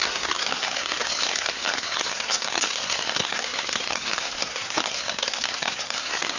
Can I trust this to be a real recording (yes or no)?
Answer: no